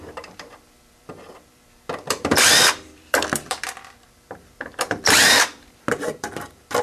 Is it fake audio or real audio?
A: fake